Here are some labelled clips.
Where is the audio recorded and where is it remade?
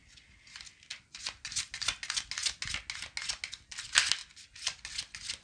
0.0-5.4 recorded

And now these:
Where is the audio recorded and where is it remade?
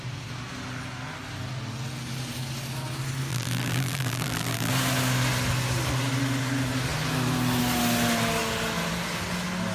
0.0-3.3 recorded; 3.3-4.7 remade; 4.7-9.7 recorded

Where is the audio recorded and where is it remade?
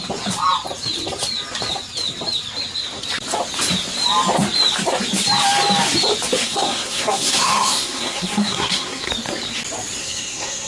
0.0-6.4 recorded; 6.4-9.1 remade; 9.1-10.0 recorded; 10.0-10.7 remade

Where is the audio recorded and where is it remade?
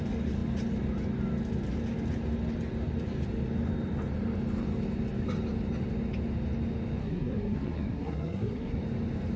0.0-7.0 recorded; 7.0-8.8 remade; 8.8-9.4 recorded